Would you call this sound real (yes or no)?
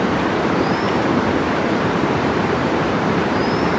no